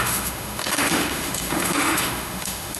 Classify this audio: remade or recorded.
remade